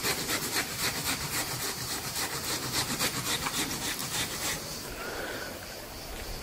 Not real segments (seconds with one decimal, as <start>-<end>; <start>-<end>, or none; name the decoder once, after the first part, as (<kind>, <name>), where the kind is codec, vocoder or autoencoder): 0.7-3.0 (vocoder, BigVGAN v2); 4.0-5.8